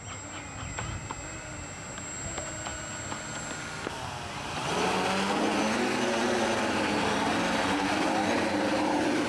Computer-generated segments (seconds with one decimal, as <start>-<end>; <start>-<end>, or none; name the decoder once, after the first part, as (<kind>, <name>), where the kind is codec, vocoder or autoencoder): none